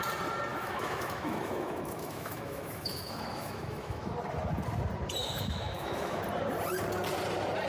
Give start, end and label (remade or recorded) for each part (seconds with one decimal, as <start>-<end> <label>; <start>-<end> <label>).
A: 0.0-0.5 recorded; 0.5-4.1 remade; 4.1-5.2 recorded; 5.2-6.2 remade; 6.2-7.7 recorded